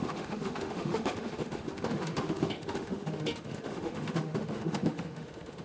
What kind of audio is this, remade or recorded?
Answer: remade